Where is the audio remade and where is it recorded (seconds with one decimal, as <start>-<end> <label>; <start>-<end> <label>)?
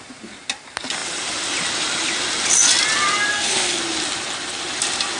0.0-3.3 recorded; 3.3-3.8 remade; 3.8-5.2 recorded